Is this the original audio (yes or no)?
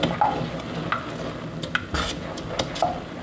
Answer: yes